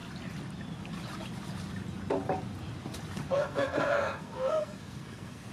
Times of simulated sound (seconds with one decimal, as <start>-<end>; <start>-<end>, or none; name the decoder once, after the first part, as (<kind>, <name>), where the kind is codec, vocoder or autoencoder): 3.3-5.5 (codec, SNAC)